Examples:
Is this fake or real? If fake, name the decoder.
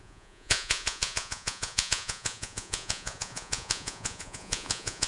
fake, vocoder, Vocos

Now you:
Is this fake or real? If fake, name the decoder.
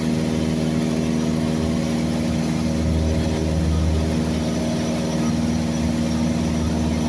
real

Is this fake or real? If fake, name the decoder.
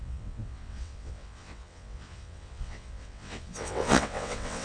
fake, vocoder, WaveNeXt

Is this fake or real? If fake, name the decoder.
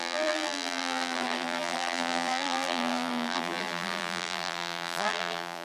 fake, vocoder, BigVGAN v2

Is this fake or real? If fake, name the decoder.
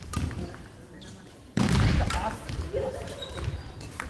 fake, vocoder, BigVGAN v2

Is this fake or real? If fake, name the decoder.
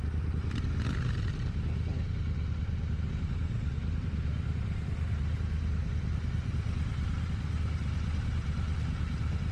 real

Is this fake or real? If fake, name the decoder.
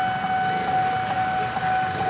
real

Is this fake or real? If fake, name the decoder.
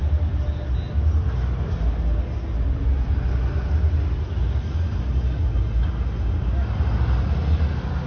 real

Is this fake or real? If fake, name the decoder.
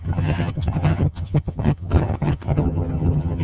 fake, vocoder, HiFi-GAN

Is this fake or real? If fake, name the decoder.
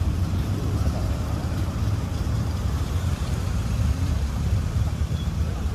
fake, vocoder, BigVGAN v2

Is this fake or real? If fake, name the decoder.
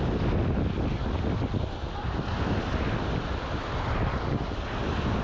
real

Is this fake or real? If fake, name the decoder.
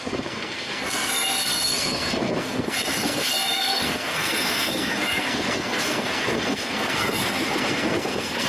fake, codec, SNAC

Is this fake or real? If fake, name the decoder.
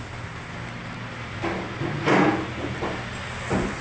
real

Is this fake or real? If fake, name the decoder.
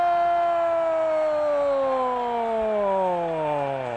real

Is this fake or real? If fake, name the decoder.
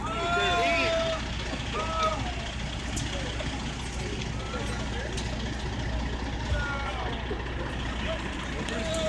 real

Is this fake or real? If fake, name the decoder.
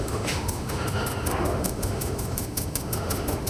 fake, autoencoder, DAC-VAE